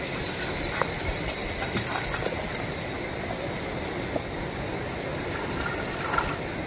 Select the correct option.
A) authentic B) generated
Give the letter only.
A